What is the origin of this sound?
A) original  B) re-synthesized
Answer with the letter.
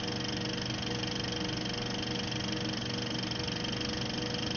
A